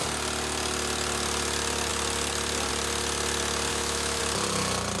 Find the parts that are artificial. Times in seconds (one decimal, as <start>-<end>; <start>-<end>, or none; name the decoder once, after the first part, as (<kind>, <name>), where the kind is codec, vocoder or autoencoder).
3.7-4.2 (autoencoder, DAC-VAE)